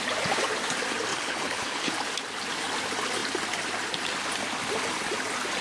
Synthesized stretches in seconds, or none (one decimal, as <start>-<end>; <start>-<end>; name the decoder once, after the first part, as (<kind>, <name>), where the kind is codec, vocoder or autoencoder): 1.1-1.9 (codec, HILCodec)